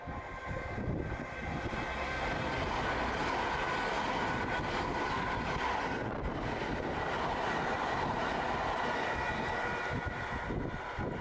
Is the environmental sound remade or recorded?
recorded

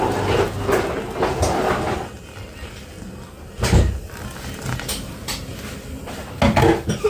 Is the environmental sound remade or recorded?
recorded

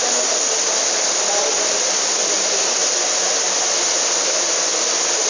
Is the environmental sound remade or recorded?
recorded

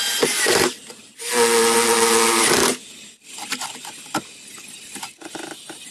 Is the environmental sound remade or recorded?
recorded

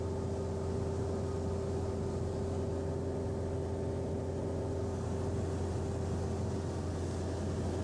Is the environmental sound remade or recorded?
recorded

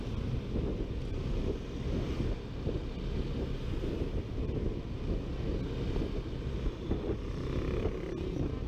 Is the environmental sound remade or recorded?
recorded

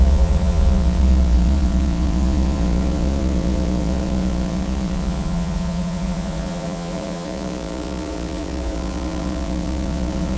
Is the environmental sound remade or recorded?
remade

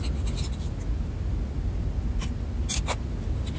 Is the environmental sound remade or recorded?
recorded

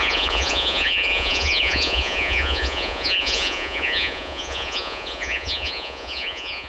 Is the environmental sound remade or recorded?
remade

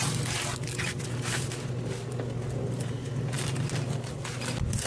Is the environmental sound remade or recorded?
recorded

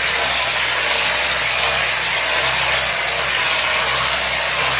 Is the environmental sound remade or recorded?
recorded